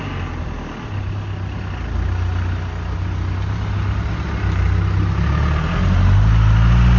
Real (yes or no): yes